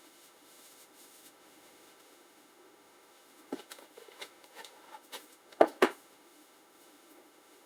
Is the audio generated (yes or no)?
yes